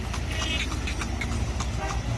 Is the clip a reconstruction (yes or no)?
no